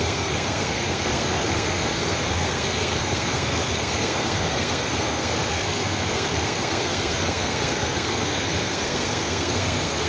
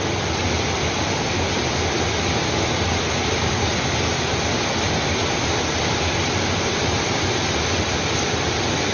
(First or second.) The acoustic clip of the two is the second